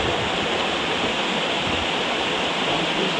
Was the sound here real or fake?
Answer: real